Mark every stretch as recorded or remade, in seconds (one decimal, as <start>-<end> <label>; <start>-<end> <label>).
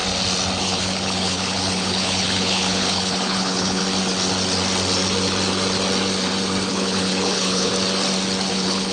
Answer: 0.0-0.6 recorded; 0.6-3.8 remade; 3.8-6.7 recorded; 6.7-7.7 remade; 7.7-8.5 recorded; 8.5-8.9 remade